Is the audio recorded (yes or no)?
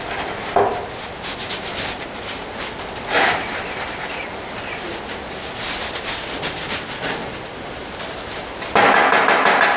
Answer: yes